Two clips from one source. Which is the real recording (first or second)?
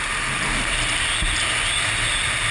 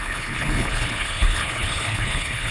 first